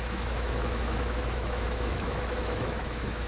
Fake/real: fake